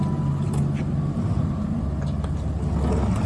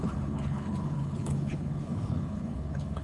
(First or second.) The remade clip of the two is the second